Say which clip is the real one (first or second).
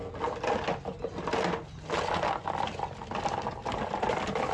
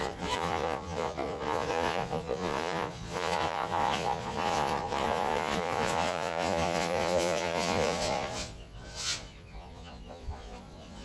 first